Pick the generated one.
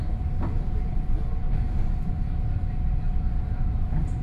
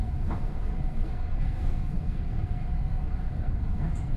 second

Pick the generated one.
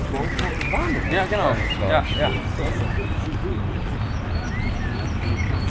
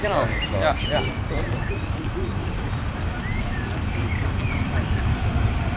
second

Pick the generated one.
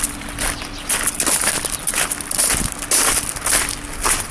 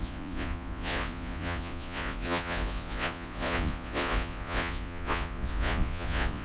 second